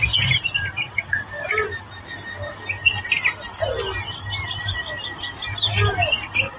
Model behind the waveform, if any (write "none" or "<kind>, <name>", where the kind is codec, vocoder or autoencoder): none